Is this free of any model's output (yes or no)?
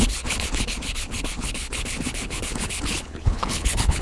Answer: no